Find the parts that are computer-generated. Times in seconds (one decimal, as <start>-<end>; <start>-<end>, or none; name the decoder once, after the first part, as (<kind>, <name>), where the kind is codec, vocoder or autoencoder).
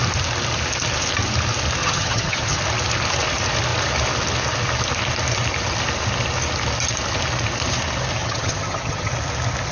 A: 1.8-2.6 (vocoder, HiFi-GAN); 8.2-9.1